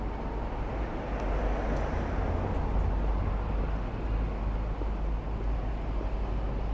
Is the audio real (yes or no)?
yes